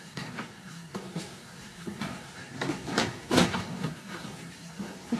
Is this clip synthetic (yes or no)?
yes